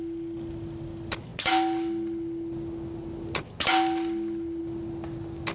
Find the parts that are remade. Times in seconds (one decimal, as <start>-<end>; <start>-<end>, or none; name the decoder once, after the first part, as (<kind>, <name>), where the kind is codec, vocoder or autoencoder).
none